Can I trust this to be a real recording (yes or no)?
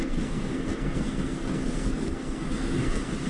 no